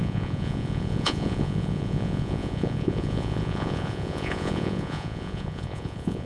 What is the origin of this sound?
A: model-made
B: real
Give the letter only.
A